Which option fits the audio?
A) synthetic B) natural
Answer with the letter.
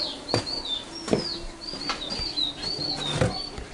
B